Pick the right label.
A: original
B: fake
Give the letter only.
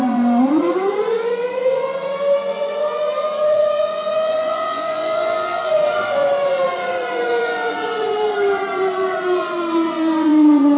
B